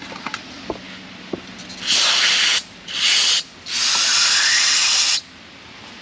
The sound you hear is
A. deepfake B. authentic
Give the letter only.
B